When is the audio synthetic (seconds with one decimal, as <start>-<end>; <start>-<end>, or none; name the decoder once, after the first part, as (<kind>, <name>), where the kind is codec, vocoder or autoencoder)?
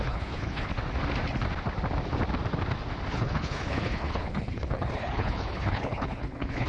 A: 0.0-0.7 (codec, HILCodec); 3.1-6.7